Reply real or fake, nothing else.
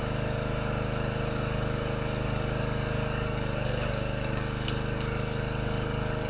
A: fake